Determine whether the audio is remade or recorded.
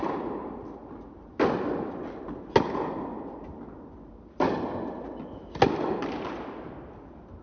recorded